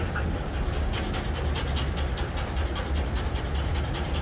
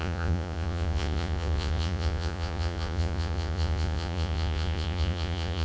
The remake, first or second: second